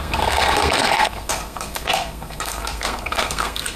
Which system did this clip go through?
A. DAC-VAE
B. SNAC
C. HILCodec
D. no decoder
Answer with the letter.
B